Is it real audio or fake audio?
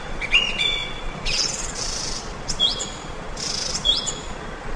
fake